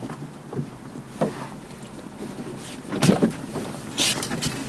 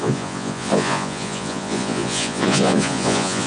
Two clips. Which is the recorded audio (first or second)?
first